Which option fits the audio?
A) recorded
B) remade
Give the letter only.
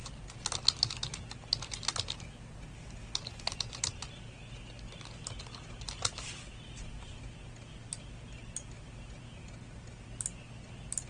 A